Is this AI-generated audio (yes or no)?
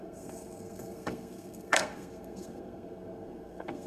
yes